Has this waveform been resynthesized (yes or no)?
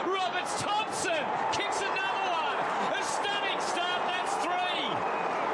no